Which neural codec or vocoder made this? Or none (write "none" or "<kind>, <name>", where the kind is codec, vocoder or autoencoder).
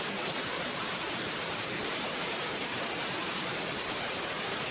vocoder, BigVGAN v2